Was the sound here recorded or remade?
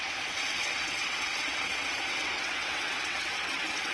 remade